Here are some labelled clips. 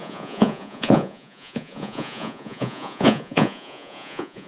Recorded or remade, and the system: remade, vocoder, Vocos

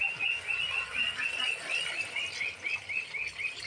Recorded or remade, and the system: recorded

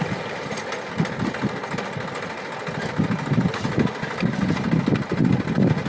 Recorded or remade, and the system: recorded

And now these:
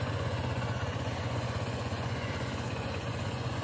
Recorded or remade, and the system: remade, vocoder, Vocos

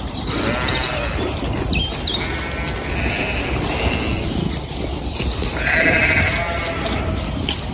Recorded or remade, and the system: recorded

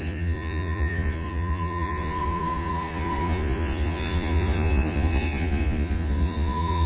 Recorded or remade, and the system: remade, vocoder, Vocos